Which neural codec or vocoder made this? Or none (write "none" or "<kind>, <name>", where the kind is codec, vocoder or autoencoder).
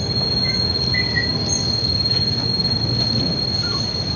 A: none